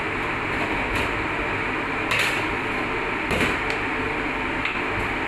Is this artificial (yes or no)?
no